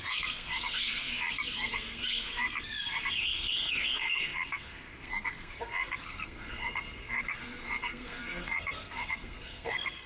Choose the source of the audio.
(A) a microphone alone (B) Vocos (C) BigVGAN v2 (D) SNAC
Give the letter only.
D